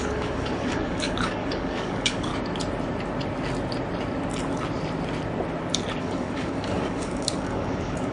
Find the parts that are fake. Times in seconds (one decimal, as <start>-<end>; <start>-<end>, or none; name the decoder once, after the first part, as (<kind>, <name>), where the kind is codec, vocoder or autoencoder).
0.0-2.3 (codec, DAC); 6.0-8.1